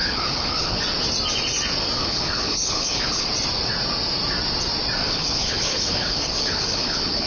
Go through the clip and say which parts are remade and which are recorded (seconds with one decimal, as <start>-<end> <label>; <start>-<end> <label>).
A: 0.0-0.8 remade; 0.8-2.0 recorded; 2.0-3.3 remade; 3.3-5.0 recorded; 5.0-7.3 remade